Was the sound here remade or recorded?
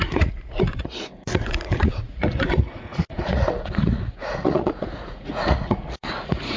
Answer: remade